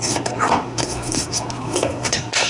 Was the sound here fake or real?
fake